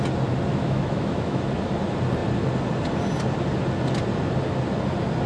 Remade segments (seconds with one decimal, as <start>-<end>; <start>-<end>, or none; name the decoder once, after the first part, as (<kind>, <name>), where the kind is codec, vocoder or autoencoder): 0.5-1.4 (autoencoder, DAC-VAE)